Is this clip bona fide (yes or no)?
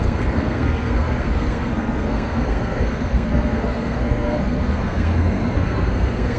no